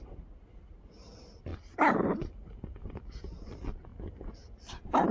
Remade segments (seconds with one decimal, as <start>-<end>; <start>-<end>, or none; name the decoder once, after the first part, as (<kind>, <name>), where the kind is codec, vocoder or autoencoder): 1.5-2.6 (vocoder, BigVGAN v2); 3.9-5.1